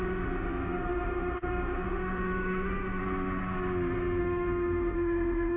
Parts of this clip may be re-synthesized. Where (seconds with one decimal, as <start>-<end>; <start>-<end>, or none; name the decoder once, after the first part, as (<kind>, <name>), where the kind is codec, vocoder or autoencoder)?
0.0-3.0 (autoencoder, DAC-VAE); 4.2-5.6